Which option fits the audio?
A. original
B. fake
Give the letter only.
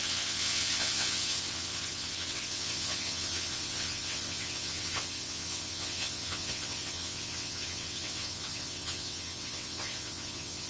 B